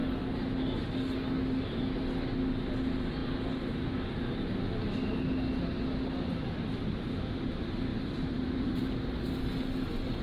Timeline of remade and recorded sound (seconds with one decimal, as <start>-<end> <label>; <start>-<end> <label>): 0.0-7.9 recorded; 7.9-8.8 remade; 8.8-10.2 recorded